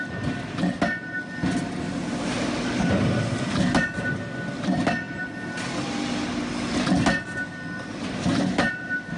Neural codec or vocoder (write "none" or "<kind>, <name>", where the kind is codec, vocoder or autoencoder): none